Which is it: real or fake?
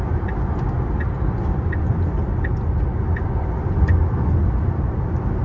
real